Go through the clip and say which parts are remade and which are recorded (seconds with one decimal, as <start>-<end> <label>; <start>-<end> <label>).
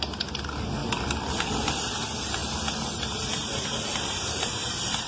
0.0-0.8 recorded; 0.8-1.5 remade; 1.5-5.1 recorded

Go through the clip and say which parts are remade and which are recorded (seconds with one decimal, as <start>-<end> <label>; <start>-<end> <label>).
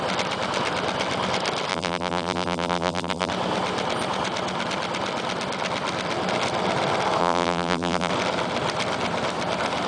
0.0-1.7 recorded; 1.7-3.3 remade; 3.3-7.2 recorded; 7.2-8.1 remade; 8.1-9.9 recorded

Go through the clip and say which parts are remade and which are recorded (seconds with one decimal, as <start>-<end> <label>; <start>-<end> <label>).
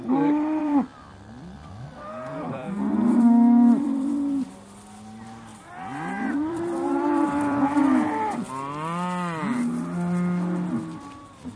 0.0-0.6 recorded; 0.6-4.5 remade; 4.5-5.5 recorded; 5.5-7.8 remade; 7.8-11.6 recorded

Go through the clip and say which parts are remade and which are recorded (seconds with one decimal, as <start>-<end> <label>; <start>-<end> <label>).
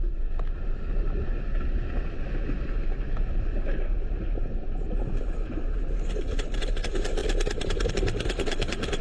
0.0-9.0 recorded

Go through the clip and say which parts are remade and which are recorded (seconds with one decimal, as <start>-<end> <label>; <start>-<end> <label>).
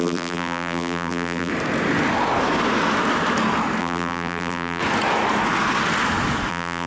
0.0-1.5 remade; 1.5-3.8 recorded; 3.8-4.8 remade; 4.8-6.5 recorded; 6.5-6.9 remade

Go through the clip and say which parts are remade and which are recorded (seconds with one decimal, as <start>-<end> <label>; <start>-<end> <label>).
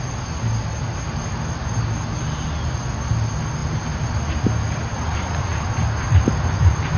0.0-3.6 recorded; 3.6-4.1 remade; 4.1-5.1 recorded; 5.1-5.8 remade; 5.8-7.0 recorded